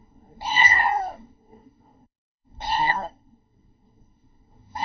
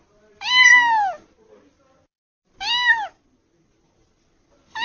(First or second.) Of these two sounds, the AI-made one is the first